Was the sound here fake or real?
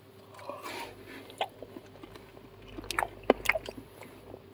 real